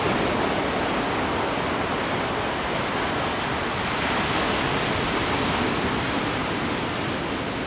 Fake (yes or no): no